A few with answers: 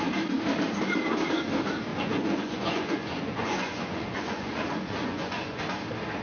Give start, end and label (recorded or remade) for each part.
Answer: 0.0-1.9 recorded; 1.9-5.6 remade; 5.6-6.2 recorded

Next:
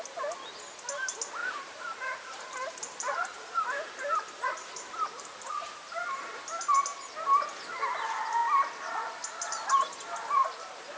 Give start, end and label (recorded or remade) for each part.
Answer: 0.0-1.4 recorded; 1.4-6.4 remade; 6.4-11.0 recorded

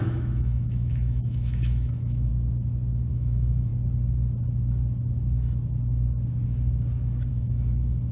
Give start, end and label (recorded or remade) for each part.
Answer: 0.0-2.3 remade; 2.3-3.1 recorded; 3.1-3.7 remade; 3.7-7.3 recorded; 7.3-8.1 remade

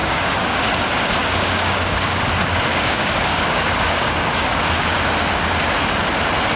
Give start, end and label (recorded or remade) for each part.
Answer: 0.0-0.6 remade; 0.6-1.2 recorded; 1.2-2.2 remade; 2.2-2.7 recorded; 2.7-5.0 remade; 5.0-6.6 recorded

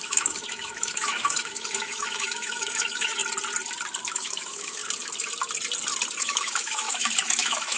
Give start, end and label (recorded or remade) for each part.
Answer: 0.0-3.2 remade; 3.2-4.1 recorded; 4.1-4.8 remade; 4.8-6.2 recorded; 6.2-7.8 remade

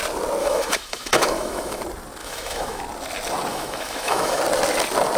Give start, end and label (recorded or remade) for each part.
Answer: 0.0-0.4 recorded; 0.4-1.8 remade; 1.8-2.2 recorded; 2.2-2.8 remade; 2.8-3.5 recorded; 3.5-4.4 remade; 4.4-5.2 recorded

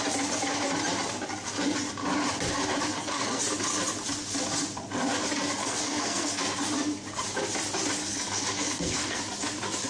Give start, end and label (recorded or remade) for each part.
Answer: 0.0-2.9 recorded; 2.9-3.4 remade; 3.4-5.6 recorded; 5.6-6.4 remade; 6.4-8.0 recorded; 8.0-9.2 remade; 9.2-9.9 recorded

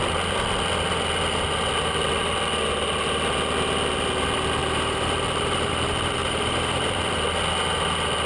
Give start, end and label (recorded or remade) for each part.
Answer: 0.0-4.6 recorded; 4.6-5.7 remade; 5.7-6.2 recorded; 6.2-7.0 remade; 7.0-8.3 recorded